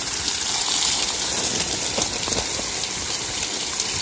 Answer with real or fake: real